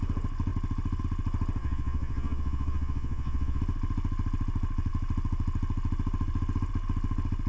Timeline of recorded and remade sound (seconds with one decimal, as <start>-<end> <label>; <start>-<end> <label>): 0.0-1.6 recorded; 1.6-3.6 remade; 3.6-7.5 recorded